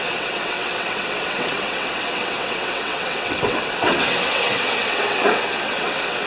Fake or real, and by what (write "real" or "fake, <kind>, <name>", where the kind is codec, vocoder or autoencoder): fake, vocoder, WaveNeXt